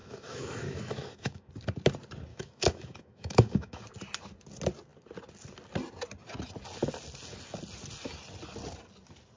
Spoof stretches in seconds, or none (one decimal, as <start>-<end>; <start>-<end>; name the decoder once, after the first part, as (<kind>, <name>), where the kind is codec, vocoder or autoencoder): 0.0-1.5 (autoencoder, DAC-VAE); 2.3-3.8